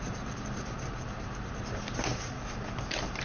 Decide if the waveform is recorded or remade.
remade